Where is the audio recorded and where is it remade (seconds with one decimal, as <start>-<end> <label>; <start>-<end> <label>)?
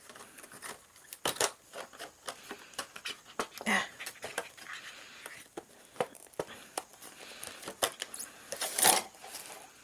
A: 0.0-9.8 recorded